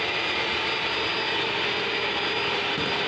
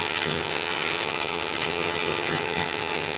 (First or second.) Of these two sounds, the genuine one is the first